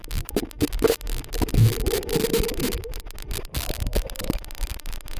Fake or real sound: real